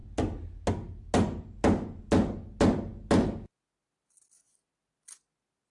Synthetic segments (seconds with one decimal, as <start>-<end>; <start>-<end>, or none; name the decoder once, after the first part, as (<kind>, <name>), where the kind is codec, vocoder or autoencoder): none